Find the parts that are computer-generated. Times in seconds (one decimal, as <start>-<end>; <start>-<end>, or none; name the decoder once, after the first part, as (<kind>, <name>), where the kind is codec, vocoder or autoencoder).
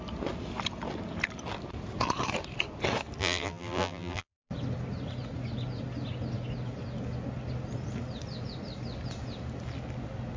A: 3.2-4.5 (vocoder, BigVGAN v2)